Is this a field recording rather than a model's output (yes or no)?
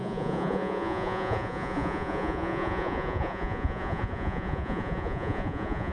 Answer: no